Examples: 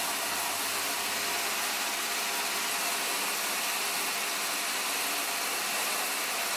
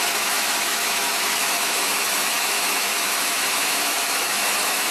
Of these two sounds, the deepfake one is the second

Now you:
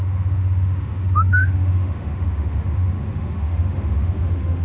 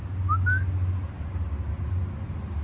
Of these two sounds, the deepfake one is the first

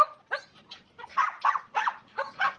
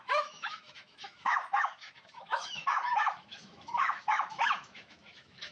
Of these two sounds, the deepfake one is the second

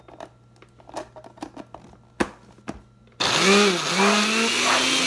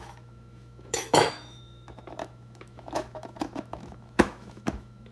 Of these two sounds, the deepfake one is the second